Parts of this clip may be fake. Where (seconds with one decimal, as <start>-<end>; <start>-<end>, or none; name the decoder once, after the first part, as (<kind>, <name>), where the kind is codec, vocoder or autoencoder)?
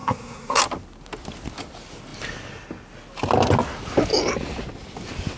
0.0-0.6 (codec, SNAC)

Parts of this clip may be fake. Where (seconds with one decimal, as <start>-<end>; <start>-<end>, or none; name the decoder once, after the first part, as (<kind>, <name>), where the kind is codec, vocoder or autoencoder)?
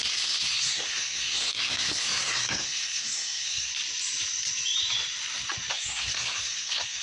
0.0-3.7 (codec, SNAC); 5.7-7.0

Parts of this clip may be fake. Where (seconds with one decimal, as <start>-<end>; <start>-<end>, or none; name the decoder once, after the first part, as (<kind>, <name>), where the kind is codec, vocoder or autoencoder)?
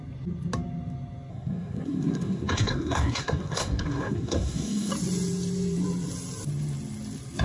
1.3-4.9 (codec, SNAC)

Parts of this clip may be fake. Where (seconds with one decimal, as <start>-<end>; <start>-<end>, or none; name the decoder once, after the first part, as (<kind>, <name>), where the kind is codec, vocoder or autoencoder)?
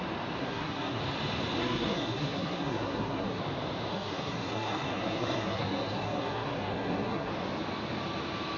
0.4-1.0 (codec, SNAC); 1.6-3.4; 3.9-7.3